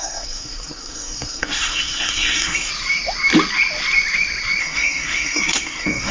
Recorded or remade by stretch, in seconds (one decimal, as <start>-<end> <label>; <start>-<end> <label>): 0.0-2.7 remade; 2.7-4.6 recorded; 4.6-6.1 remade